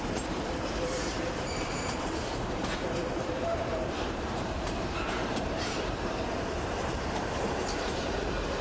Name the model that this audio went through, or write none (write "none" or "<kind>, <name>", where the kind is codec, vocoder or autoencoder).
vocoder, BigVGAN v2